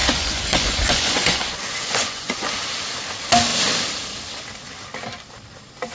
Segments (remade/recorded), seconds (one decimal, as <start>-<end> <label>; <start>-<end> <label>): 0.0-2.5 remade; 2.5-5.9 recorded